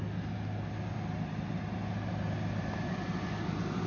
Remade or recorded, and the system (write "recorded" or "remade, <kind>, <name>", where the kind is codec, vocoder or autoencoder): recorded